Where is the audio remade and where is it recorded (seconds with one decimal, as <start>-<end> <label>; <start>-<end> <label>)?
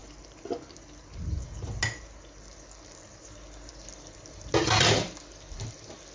0.0-6.1 recorded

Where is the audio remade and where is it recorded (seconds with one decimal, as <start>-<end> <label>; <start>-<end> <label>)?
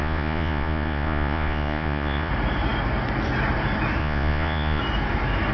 0.0-2.3 remade; 2.3-4.0 recorded; 4.0-4.8 remade; 4.8-5.5 recorded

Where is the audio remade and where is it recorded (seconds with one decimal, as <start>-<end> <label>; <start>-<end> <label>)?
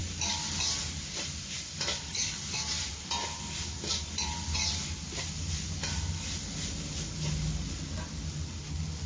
0.0-9.1 recorded